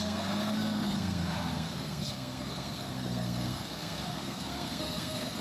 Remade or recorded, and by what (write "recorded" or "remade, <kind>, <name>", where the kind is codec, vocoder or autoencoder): remade, codec, SNAC